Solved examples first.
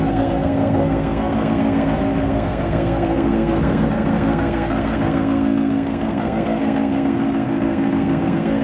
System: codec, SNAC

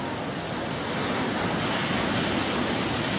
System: none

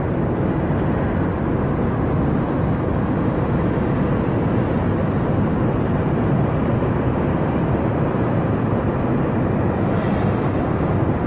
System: none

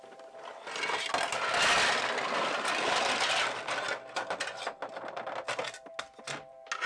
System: none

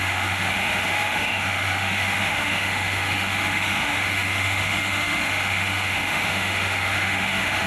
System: autoencoder, DAC-VAE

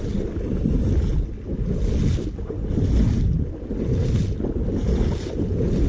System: none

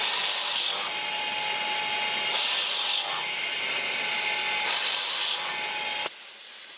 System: none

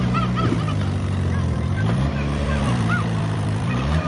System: vocoder, BigVGAN v2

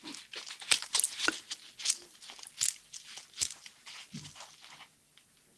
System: none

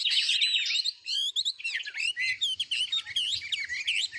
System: none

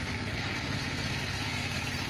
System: codec, SNAC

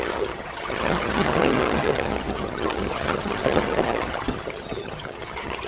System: vocoder, HiFi-GAN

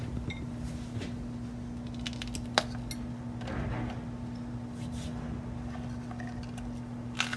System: none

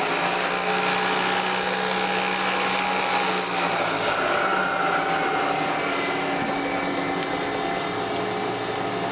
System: none